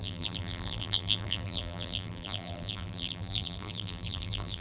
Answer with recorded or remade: remade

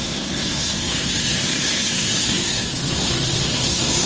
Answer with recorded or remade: remade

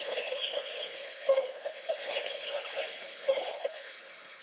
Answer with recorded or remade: remade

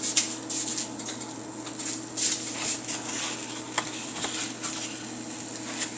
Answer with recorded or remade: recorded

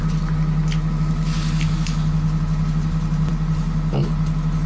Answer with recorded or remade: recorded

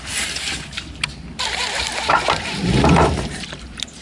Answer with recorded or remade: remade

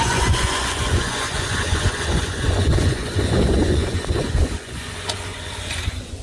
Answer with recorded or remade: remade